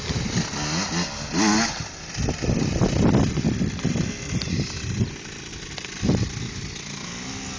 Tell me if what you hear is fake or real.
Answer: real